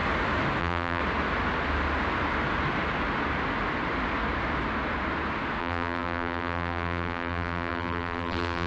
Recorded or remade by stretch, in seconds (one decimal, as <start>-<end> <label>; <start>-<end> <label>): 0.0-0.6 recorded; 0.6-1.0 remade; 1.0-5.6 recorded; 5.6-8.7 remade